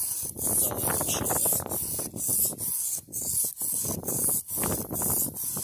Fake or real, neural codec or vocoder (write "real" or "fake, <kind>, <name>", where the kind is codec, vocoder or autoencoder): real